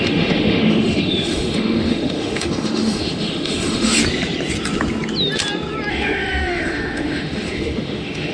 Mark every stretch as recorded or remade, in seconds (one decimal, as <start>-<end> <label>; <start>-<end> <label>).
0.0-4.0 remade; 4.0-5.9 recorded; 5.9-8.3 remade